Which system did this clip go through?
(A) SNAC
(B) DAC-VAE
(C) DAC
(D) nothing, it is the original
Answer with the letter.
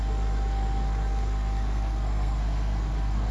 A